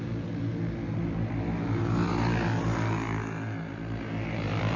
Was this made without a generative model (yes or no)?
yes